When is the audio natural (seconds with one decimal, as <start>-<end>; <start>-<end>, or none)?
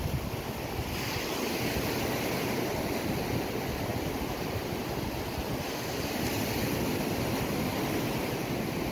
0.0-3.9; 5.4-8.9